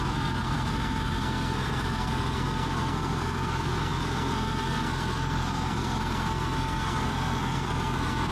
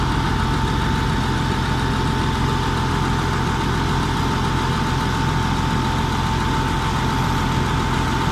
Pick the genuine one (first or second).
second